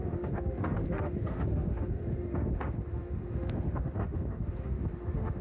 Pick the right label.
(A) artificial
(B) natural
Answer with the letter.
A